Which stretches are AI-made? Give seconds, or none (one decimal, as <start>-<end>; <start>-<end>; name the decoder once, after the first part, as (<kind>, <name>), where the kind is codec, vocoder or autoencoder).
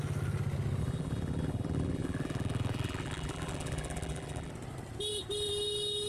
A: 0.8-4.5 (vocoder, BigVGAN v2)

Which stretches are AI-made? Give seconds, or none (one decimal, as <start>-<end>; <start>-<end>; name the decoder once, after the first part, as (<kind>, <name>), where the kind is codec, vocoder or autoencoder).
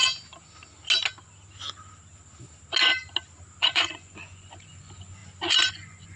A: 3.6-5.2 (vocoder, Vocos); 5.7-6.2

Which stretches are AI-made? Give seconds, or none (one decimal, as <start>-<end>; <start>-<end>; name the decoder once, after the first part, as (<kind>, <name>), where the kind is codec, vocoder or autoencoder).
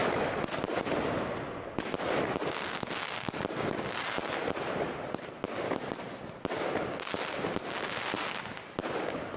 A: none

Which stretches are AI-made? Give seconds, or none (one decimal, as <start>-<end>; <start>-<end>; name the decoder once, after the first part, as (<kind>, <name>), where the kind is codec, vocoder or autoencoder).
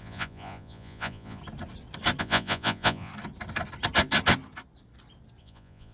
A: 0.0-1.4 (vocoder, Vocos); 2.2-3.1; 5.4-5.9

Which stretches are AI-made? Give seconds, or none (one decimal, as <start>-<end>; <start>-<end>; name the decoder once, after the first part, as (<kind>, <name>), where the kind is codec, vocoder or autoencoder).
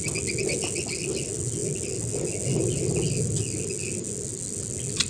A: none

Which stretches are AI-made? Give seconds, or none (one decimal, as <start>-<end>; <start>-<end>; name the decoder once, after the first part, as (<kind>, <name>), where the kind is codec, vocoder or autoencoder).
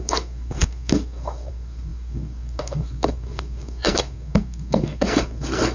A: 0.0-5.7 (codec, SNAC)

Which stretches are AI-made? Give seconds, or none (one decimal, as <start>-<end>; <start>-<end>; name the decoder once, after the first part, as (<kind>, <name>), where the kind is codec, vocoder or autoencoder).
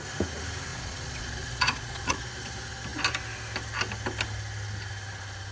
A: 0.7-2.2 (vocoder, Vocos)